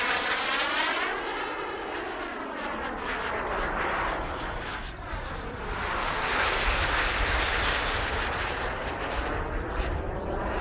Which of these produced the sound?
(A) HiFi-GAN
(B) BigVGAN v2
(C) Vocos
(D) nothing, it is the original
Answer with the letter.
D